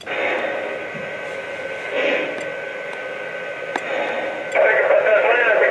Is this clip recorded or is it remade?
recorded